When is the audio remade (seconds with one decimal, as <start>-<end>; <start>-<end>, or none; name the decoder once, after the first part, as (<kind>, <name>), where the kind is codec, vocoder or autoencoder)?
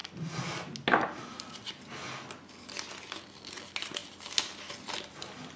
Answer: none